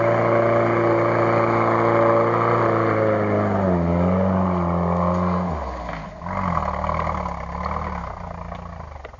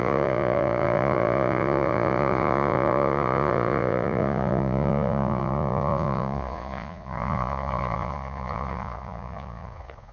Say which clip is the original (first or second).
first